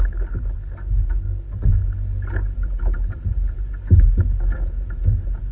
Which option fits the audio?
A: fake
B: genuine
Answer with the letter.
B